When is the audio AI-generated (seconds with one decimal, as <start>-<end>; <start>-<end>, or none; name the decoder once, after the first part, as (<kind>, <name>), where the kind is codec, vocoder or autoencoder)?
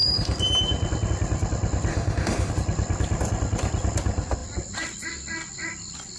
1.9-2.5 (autoencoder, DAC-VAE)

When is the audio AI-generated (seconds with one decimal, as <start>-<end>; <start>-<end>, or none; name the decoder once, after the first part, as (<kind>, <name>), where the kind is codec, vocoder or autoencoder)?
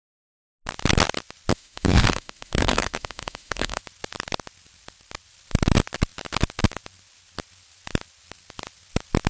1.5-3.8 (autoencoder, DAC-VAE)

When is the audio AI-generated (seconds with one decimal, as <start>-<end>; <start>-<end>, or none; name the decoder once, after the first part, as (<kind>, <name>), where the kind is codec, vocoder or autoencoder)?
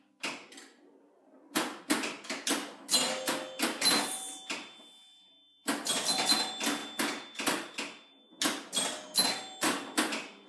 none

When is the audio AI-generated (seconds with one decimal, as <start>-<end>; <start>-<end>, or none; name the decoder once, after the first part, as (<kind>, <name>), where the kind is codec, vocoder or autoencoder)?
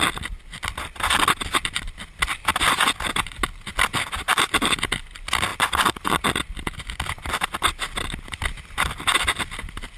none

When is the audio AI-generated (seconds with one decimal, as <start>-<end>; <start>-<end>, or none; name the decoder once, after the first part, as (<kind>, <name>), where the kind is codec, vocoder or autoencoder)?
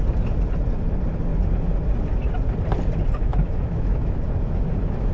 3.2-5.1 (autoencoder, DAC-VAE)